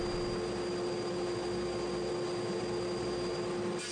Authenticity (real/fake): real